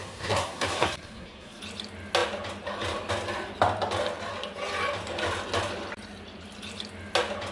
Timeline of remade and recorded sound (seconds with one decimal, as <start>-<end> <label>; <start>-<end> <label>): 0.0-1.6 remade; 1.6-7.5 recorded